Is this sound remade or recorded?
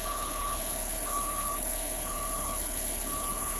remade